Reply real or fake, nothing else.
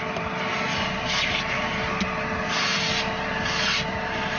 real